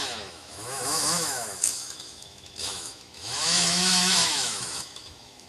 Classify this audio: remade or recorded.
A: remade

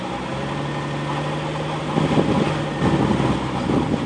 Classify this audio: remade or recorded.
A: recorded